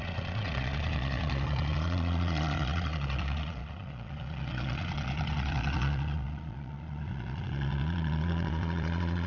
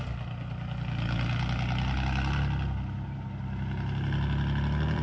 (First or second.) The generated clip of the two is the first